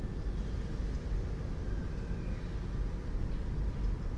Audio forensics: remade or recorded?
recorded